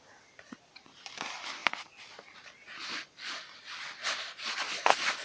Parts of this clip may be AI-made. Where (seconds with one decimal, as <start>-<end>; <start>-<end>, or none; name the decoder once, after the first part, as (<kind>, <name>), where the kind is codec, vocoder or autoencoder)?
0.0-1.6 (vocoder, BigVGAN v2); 4.5-5.2